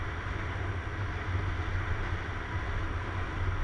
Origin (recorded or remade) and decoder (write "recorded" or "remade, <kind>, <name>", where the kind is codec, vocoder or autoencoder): recorded